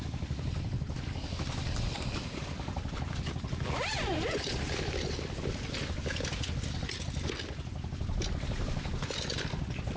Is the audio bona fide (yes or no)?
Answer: yes